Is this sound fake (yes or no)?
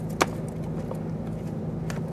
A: no